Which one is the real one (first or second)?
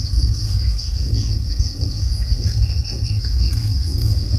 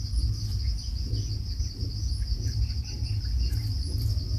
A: second